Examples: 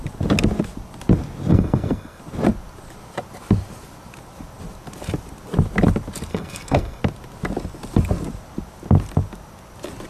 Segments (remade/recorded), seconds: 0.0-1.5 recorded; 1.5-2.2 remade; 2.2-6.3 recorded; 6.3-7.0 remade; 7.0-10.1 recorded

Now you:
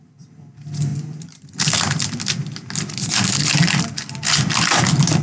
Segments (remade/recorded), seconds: 0.0-5.2 recorded

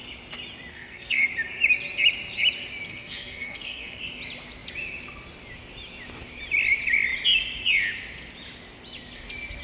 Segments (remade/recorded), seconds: 0.0-0.7 recorded; 0.7-1.3 remade; 1.3-2.9 recorded; 2.9-4.0 remade; 4.0-9.6 recorded

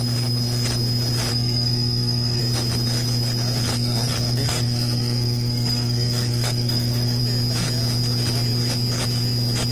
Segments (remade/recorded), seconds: 0.0-1.3 recorded; 1.3-2.4 remade; 2.4-3.7 recorded; 3.7-7.2 remade; 7.2-9.7 recorded

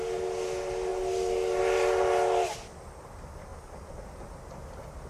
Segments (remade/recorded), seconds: 0.0-5.1 recorded